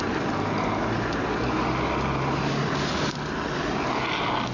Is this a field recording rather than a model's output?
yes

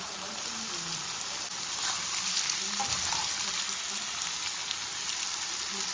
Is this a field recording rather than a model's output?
yes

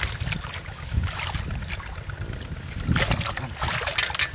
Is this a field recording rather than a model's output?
yes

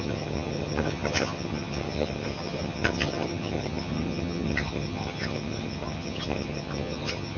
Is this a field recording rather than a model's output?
no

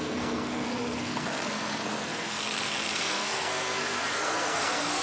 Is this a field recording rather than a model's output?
no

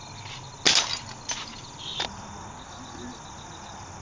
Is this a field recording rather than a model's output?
yes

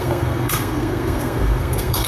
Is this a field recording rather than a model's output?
no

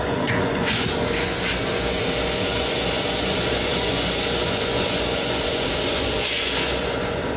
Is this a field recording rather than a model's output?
no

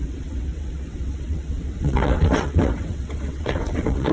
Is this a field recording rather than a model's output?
no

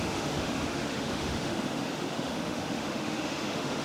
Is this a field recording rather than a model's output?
no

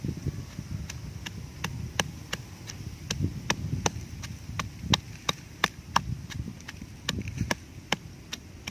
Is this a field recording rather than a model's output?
yes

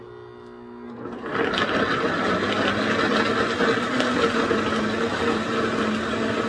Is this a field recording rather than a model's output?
yes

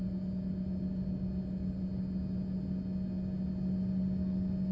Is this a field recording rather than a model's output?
yes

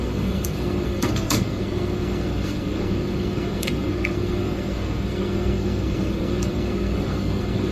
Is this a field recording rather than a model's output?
no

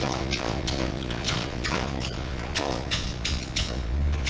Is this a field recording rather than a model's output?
no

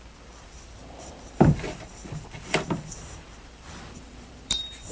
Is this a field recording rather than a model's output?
no